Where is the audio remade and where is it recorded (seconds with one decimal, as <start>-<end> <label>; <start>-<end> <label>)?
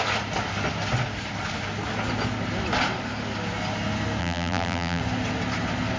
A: 0.0-4.2 recorded; 4.2-5.0 remade; 5.0-6.0 recorded